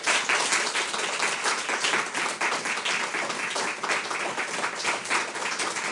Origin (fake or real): real